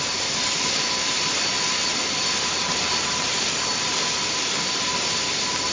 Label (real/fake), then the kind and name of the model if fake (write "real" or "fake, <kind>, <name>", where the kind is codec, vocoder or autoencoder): fake, vocoder, BigVGAN v2